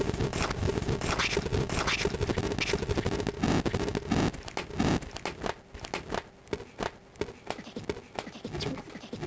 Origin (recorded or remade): recorded